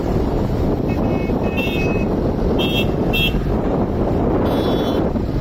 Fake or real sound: real